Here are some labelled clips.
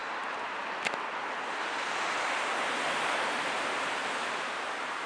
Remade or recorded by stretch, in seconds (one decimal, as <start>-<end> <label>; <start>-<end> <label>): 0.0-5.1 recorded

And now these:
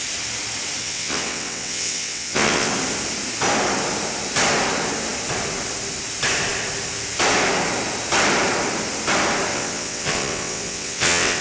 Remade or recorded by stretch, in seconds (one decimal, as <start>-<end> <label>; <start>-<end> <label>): 0.0-0.8 recorded; 0.8-2.7 remade; 2.7-9.5 recorded; 9.5-11.4 remade

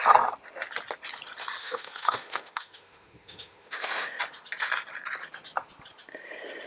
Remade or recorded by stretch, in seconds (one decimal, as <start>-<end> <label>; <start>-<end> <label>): 0.0-1.6 recorded; 1.6-4.2 remade; 4.2-6.7 recorded

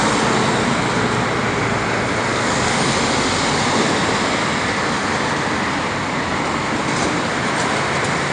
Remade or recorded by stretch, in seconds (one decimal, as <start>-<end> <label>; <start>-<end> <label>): 0.0-2.3 recorded; 2.3-2.8 remade; 2.8-8.3 recorded

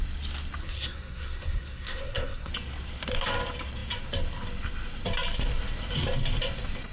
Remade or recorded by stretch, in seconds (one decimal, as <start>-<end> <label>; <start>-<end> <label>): 0.0-0.6 recorded; 0.6-2.5 remade; 2.5-6.9 recorded

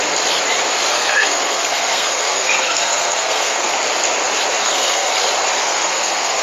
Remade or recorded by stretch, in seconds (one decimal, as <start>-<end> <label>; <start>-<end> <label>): 0.0-0.9 recorded; 0.9-3.7 remade; 3.7-4.6 recorded; 4.6-5.1 remade; 5.1-5.6 recorded; 5.6-6.4 remade

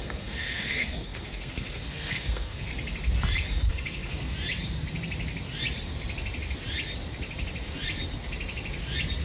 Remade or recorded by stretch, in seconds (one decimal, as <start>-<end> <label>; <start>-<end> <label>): 0.0-2.7 remade; 2.7-3.7 recorded; 3.7-4.3 remade; 4.3-9.2 recorded

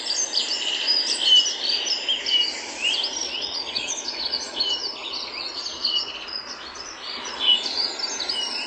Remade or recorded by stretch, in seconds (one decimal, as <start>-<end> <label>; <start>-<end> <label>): 0.0-3.2 recorded; 3.2-4.6 remade; 4.6-5.0 recorded; 5.0-7.9 remade; 7.9-8.7 recorded